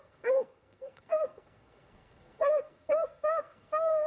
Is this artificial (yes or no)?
yes